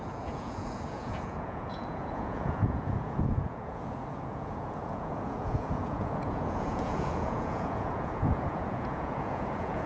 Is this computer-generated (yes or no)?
yes